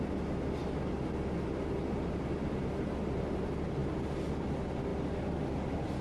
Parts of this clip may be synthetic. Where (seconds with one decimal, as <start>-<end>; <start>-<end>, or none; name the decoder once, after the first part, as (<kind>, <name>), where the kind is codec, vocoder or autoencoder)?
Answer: none